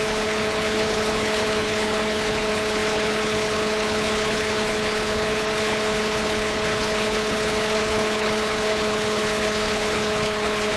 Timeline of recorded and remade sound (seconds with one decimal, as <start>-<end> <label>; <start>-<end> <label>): 0.0-10.8 remade